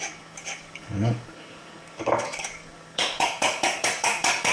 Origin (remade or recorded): remade